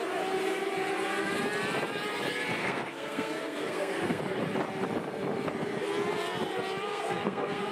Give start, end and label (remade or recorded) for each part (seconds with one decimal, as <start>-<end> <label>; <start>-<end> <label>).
0.0-2.6 recorded; 2.6-4.2 remade; 4.2-6.9 recorded; 6.9-7.7 remade